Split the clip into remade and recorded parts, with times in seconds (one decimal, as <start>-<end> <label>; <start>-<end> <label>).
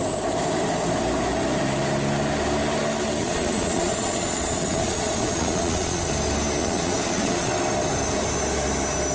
0.0-3.2 recorded; 3.2-6.1 remade; 6.1-6.6 recorded; 6.6-7.5 remade; 7.5-9.1 recorded